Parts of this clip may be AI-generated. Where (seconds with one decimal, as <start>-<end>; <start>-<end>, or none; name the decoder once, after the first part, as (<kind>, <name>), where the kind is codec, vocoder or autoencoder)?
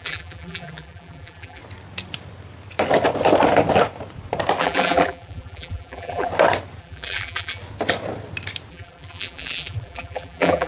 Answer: 0.0-1.6 (vocoder, BigVGAN v2); 4.6-6.3; 6.8-7.6; 8.7-10.7